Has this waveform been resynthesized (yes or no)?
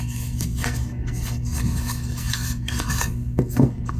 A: yes